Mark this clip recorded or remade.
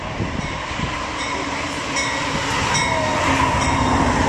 recorded